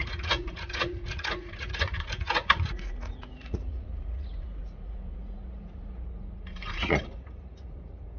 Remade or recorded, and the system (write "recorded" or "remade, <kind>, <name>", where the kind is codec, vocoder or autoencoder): remade, vocoder, Vocos